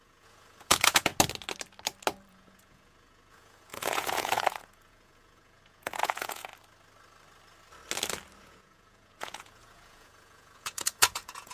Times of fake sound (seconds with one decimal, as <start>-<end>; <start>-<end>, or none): 0.0-1.1; 2.3-6.5; 8.4-11.5